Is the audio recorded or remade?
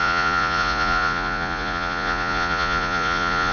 remade